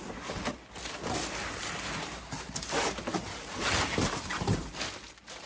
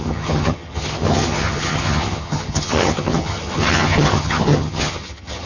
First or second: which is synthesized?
second